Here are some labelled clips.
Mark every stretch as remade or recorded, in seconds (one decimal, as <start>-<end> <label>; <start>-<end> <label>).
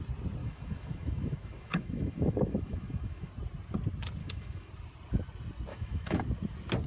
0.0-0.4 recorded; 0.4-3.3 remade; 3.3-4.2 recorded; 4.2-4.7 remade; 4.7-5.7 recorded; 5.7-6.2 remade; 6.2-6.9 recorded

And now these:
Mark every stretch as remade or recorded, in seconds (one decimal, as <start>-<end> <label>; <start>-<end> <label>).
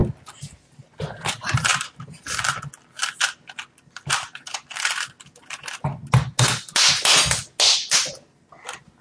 0.0-9.0 recorded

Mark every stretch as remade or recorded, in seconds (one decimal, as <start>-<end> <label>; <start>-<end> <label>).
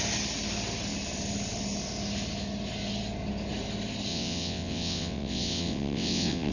0.0-4.1 recorded; 4.1-6.5 remade